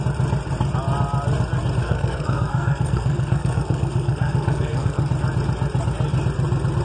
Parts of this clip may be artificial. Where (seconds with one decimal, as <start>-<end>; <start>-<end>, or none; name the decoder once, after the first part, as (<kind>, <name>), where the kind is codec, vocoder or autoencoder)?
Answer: 1.8-5.0 (codec, SNAC)